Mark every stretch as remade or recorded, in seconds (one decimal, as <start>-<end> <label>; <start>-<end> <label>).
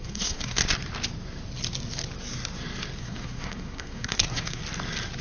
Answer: 0.0-0.6 remade; 0.6-3.0 recorded; 3.0-4.6 remade; 4.6-5.2 recorded